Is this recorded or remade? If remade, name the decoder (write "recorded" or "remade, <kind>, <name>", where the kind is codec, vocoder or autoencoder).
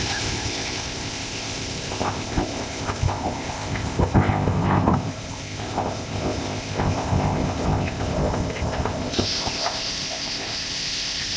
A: remade, codec, ZipCodec